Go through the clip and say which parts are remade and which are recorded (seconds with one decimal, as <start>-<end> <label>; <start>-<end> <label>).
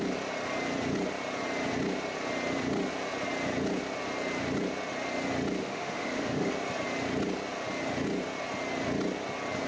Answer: 0.0-5.6 recorded; 5.6-6.5 remade; 6.5-9.7 recorded